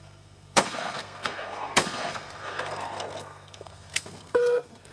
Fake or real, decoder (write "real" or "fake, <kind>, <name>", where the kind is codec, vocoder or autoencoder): fake, codec, SNAC